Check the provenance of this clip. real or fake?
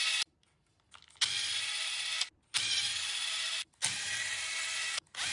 real